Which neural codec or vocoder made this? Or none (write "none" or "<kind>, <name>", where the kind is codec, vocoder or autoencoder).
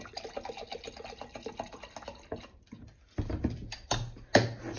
none